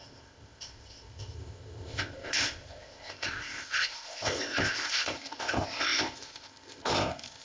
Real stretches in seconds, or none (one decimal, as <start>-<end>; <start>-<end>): none